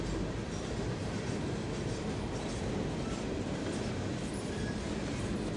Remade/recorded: recorded